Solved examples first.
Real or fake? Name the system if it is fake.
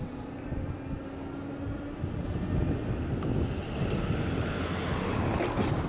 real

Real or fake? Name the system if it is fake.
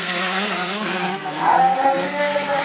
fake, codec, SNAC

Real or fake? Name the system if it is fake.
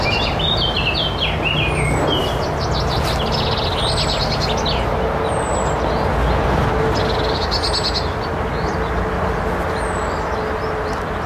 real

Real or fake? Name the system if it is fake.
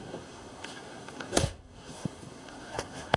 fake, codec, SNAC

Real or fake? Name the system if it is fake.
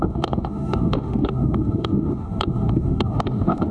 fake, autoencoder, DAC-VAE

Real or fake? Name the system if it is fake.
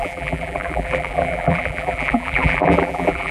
fake, vocoder, BigVGAN v2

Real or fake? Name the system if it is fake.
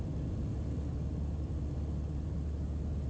real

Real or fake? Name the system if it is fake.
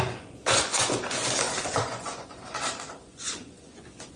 fake, vocoder, Vocos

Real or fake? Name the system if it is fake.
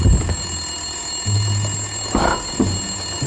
real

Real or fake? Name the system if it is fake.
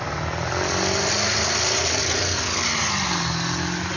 real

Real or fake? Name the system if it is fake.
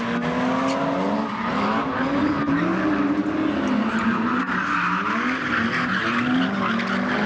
real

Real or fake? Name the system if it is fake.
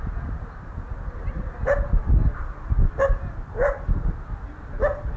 real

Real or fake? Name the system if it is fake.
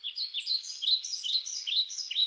fake, codec, HILCodec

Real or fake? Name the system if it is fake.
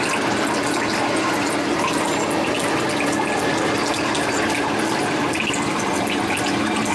real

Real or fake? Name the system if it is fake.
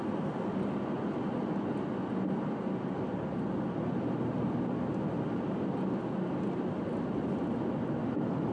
real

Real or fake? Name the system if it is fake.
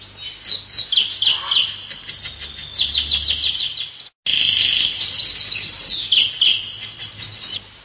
real